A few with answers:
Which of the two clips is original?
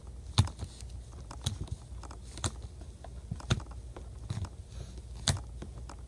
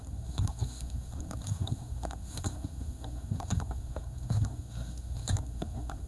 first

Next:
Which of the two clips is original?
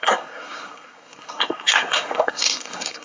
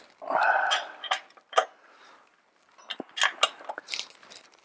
second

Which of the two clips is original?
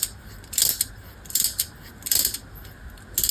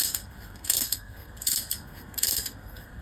first